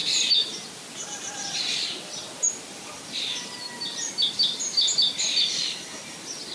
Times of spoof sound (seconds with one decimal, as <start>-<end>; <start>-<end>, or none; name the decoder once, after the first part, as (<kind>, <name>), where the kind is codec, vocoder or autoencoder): none